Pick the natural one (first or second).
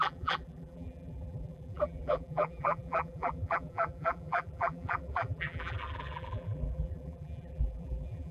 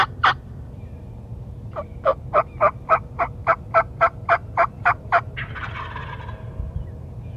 second